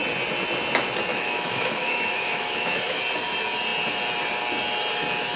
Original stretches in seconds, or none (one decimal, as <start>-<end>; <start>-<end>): 0.0-1.1; 3.0-5.4